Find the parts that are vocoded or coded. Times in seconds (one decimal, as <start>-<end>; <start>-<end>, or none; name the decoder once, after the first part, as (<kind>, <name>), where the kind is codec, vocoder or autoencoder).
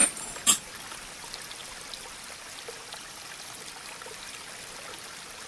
0.0-0.7 (vocoder, BigVGAN v2)